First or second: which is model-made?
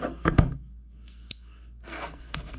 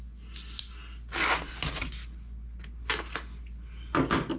first